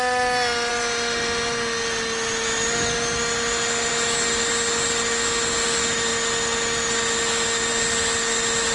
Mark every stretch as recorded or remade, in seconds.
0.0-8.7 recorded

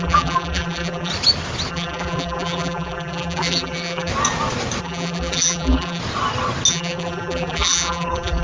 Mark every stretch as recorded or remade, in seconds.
0.0-1.1 remade; 1.1-1.7 recorded; 1.7-4.1 remade; 4.1-4.8 recorded; 4.8-6.0 remade; 6.0-6.7 recorded; 6.7-8.4 remade

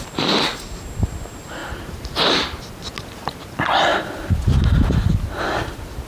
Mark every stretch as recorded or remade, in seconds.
0.0-1.6 recorded; 1.6-2.6 remade; 2.6-6.1 recorded

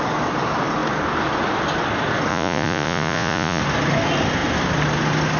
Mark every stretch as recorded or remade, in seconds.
0.0-2.3 recorded; 2.3-3.6 remade; 3.6-5.4 recorded

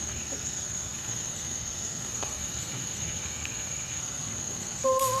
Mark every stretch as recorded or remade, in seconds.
0.0-5.2 remade